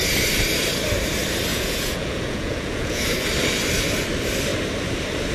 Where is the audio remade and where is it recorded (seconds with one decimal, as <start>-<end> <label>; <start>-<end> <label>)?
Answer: 0.0-1.5 recorded; 1.5-3.0 remade; 3.0-5.3 recorded